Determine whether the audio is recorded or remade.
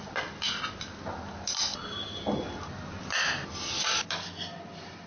recorded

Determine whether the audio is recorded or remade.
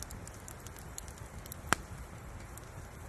recorded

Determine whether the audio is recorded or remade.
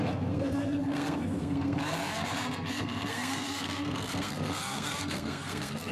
remade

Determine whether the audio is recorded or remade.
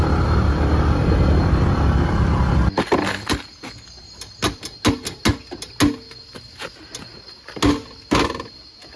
recorded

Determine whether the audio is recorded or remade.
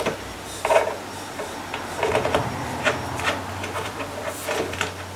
remade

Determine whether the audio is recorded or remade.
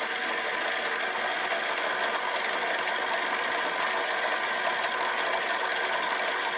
recorded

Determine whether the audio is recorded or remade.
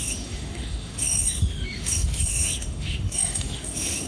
remade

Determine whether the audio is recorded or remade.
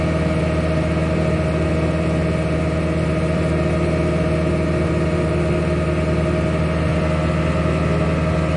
recorded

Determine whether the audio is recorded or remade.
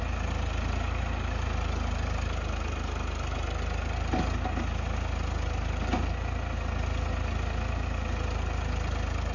recorded